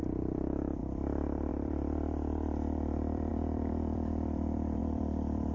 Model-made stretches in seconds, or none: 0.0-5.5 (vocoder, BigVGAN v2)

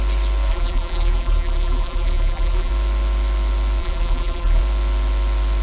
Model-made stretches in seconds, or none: 0.5-2.7 (vocoder, BigVGAN v2); 3.8-4.6

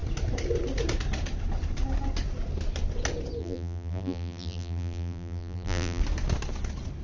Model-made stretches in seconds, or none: 3.4-6.0 (vocoder, BigVGAN v2)

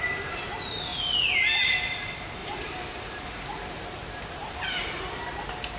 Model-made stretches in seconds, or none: 2.4-3.4 (vocoder, BigVGAN v2); 4.4-5.3

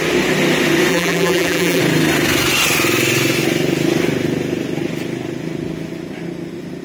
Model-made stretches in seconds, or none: 0.9-1.8 (vocoder, BigVGAN v2)

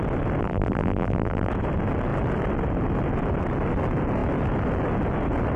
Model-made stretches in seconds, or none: 0.4-1.5 (vocoder, BigVGAN v2)

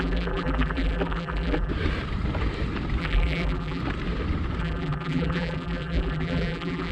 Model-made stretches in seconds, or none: 0.0-1.7 (vocoder, BigVGAN v2); 3.0-3.8; 4.6-6.9

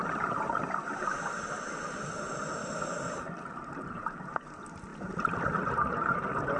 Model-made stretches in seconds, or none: 0.0-1.1 (vocoder, BigVGAN v2); 3.5-4.9; 5.7-6.6